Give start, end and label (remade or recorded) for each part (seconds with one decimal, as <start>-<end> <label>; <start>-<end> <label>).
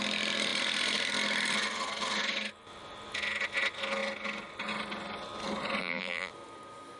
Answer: 0.0-5.8 recorded; 5.8-6.3 remade; 6.3-7.0 recorded